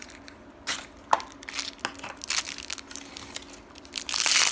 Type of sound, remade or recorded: recorded